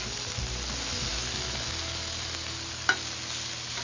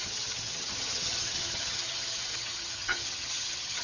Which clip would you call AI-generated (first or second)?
second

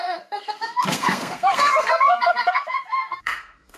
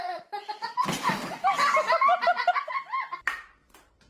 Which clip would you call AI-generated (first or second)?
first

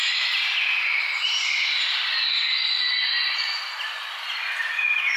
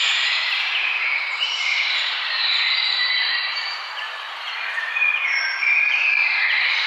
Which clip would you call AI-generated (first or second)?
second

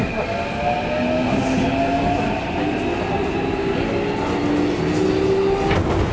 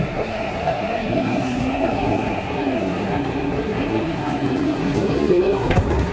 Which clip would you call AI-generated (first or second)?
second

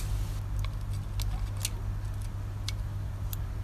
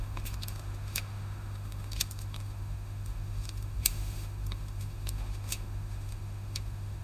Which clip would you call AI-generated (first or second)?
second